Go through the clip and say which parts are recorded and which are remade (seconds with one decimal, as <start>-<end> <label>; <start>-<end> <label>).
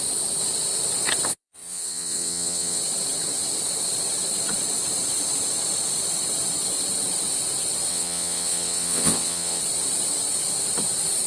0.0-1.3 recorded; 1.3-2.8 remade; 2.8-7.9 recorded; 7.9-9.6 remade; 9.6-11.3 recorded